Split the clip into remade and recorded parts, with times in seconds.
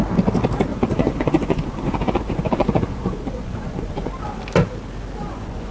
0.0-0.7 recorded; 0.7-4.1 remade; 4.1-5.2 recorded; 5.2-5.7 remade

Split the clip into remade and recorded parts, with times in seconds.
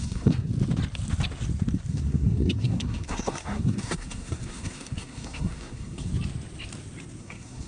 0.0-0.5 remade; 0.5-1.9 recorded; 1.9-6.1 remade; 6.1-7.2 recorded; 7.2-7.7 remade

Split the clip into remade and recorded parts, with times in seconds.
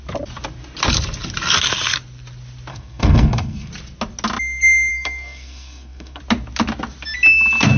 0.0-2.7 recorded; 2.7-3.7 remade; 3.7-4.9 recorded; 4.9-6.2 remade; 6.2-7.8 recorded